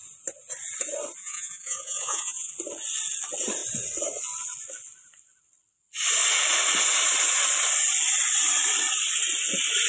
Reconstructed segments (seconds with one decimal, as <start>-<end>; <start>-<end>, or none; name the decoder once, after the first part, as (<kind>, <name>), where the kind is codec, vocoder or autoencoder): 1.2-2.5 (vocoder, Vocos)